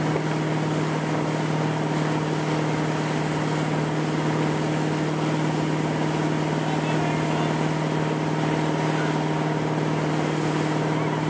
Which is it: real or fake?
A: real